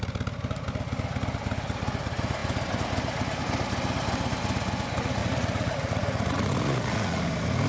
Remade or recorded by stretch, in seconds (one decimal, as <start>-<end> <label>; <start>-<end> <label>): 0.0-5.2 recorded; 5.2-7.2 remade; 7.2-7.7 recorded